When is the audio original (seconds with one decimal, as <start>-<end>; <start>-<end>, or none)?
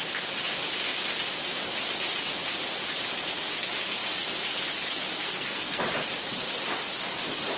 0.0-5.2; 5.8-7.6